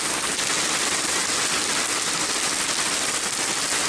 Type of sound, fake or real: real